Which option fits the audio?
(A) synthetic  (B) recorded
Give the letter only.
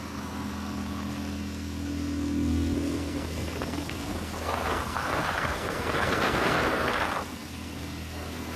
A